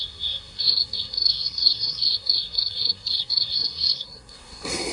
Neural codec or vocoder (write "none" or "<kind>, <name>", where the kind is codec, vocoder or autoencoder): codec, SNAC